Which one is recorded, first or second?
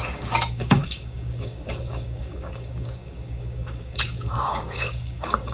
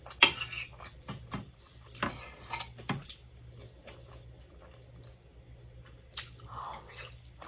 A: second